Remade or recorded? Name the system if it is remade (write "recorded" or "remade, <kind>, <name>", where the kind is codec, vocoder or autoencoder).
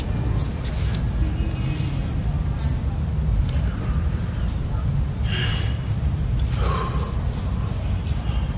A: recorded